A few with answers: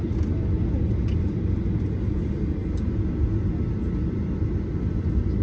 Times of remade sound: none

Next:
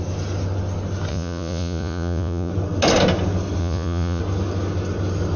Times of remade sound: 1.1-2.5 (vocoder, Vocos); 3.6-4.2

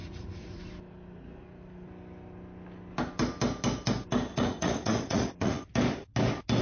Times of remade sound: 0.0-0.6 (vocoder, Vocos); 4.3-5.6

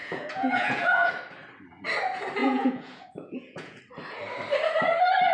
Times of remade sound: 0.0-1.1 (vocoder, Vocos); 2.4-3.8

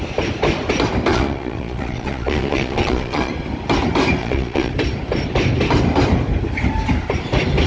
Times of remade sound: 1.1-3.3 (vocoder, Vocos); 4.2-4.7

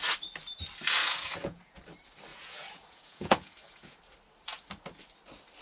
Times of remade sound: 1.0-1.7 (vocoder, Vocos); 2.3-4.0